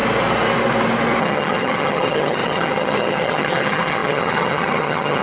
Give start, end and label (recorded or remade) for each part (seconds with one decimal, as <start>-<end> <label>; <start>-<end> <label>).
0.0-1.2 recorded; 1.2-5.2 remade